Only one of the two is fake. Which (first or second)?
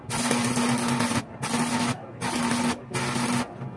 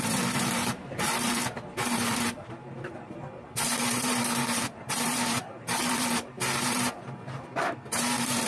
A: second